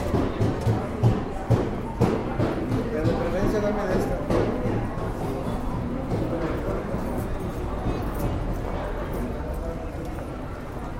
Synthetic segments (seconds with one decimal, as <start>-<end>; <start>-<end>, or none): 0.0-2.2; 5.2-7.5; 9.9-11.0